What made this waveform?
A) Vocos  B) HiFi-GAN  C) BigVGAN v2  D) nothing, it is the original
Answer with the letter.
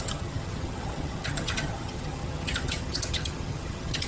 B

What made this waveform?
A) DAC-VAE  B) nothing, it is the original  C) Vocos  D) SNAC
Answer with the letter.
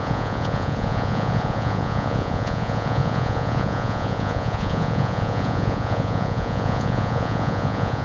C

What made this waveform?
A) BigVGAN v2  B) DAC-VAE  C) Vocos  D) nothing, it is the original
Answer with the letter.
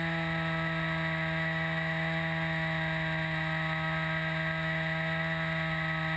D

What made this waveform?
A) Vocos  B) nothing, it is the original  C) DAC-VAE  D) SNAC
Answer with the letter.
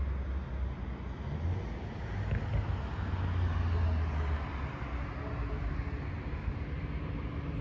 B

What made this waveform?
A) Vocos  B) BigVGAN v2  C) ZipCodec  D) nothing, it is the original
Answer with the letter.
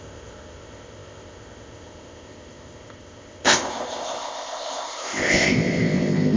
C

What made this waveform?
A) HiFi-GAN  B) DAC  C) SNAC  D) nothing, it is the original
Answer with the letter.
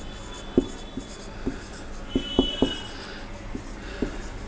D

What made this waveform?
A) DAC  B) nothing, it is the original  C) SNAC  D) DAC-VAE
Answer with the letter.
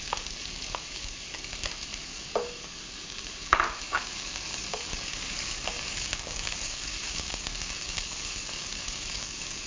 A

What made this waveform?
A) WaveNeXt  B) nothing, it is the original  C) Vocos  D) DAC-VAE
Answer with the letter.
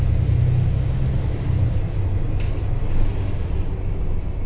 B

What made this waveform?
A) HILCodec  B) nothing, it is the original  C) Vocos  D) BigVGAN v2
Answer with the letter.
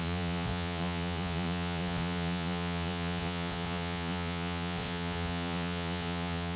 C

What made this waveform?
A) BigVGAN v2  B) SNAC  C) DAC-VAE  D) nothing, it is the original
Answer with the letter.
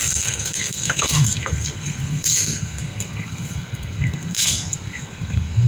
B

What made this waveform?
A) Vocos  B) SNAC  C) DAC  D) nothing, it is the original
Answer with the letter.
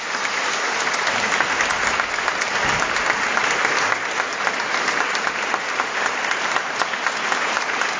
D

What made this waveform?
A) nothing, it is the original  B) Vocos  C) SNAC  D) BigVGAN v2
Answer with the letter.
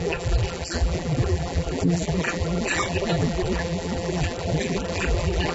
D